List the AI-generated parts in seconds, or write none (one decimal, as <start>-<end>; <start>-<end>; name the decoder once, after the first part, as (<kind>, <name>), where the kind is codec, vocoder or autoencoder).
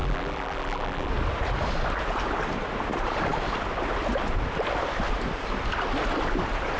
0.0-1.1 (vocoder, BigVGAN v2)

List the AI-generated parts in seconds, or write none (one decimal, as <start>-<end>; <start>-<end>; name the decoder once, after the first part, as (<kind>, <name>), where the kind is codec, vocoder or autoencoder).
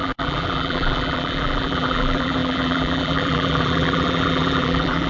0.0-5.1 (vocoder, BigVGAN v2)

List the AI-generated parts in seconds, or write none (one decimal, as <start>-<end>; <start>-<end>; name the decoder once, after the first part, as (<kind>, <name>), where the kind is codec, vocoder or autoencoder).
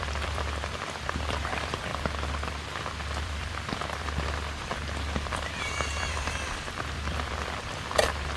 0.0-1.9 (vocoder, BigVGAN v2); 3.2-8.4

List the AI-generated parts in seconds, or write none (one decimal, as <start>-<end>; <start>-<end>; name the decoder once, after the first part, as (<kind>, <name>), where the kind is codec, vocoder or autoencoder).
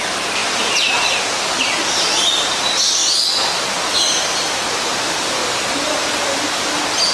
0.0-3.0 (vocoder, BigVGAN v2); 4.7-5.4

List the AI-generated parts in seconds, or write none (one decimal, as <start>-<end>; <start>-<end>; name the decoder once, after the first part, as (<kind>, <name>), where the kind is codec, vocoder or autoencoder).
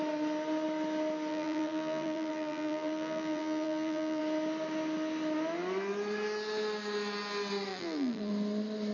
1.3-4.2 (vocoder, BigVGAN v2); 7.7-8.3